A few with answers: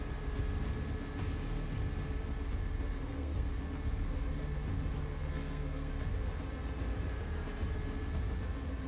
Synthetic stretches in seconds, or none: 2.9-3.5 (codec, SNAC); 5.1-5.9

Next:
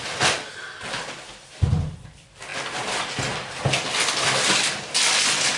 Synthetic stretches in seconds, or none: none

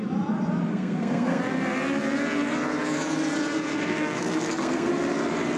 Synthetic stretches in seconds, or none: 0.7-1.4 (codec, SNAC); 3.7-4.9

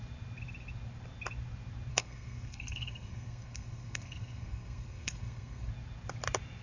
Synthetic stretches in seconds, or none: 1.9-5.7 (codec, SNAC)